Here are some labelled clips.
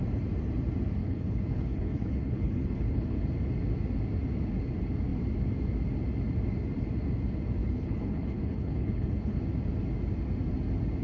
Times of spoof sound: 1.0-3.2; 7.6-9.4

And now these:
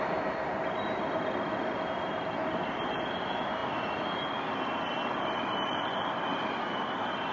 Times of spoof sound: none

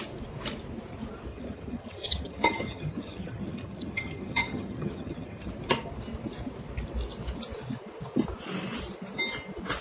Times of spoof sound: 1.3-5.5